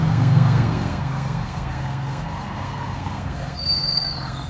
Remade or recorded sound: remade